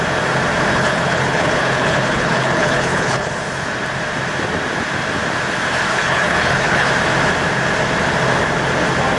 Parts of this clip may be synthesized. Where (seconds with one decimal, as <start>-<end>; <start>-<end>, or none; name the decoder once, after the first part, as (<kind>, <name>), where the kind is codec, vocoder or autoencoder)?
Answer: 0.7-3.3 (codec, HILCodec); 5.9-6.9